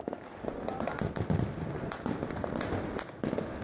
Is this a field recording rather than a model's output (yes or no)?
yes